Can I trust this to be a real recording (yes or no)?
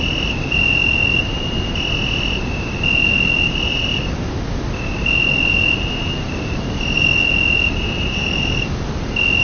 yes